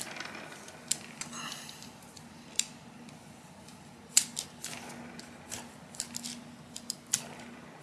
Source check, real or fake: real